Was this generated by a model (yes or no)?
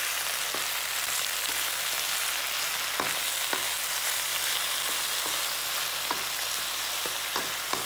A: no